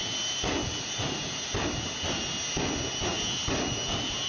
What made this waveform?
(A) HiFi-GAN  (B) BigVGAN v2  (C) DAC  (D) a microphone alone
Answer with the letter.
D